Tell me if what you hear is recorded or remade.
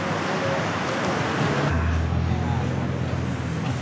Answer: recorded